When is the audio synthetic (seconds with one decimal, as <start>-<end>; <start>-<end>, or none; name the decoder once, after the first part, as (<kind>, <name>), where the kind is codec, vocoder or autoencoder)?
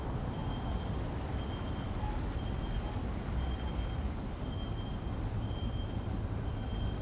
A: none